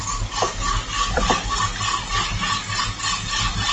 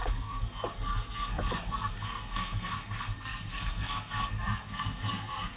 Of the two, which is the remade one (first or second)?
second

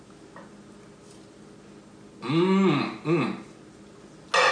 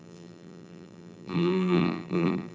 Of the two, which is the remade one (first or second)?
second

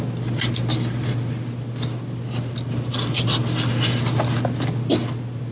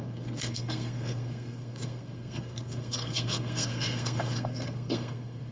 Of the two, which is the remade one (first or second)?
second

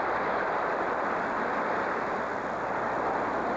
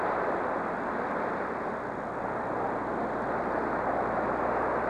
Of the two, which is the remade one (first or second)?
first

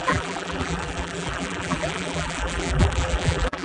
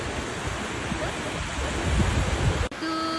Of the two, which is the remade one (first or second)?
first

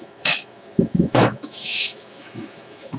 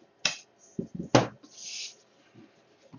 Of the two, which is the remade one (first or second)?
first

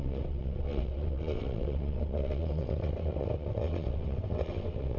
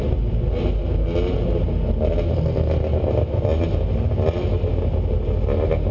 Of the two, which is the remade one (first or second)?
first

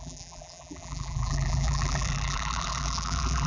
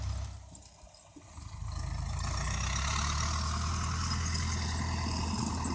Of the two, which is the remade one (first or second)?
first